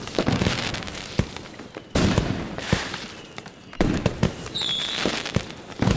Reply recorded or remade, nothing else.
remade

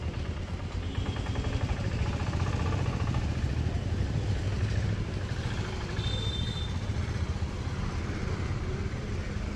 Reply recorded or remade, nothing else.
remade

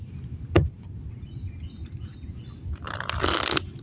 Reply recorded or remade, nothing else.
recorded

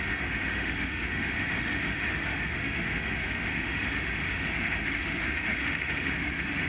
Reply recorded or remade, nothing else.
remade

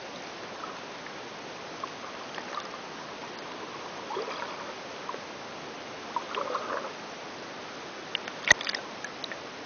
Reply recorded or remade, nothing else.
recorded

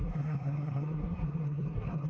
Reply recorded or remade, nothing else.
remade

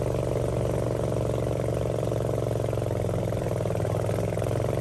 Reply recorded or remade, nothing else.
recorded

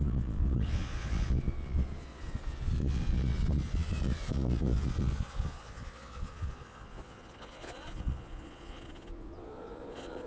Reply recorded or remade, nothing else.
remade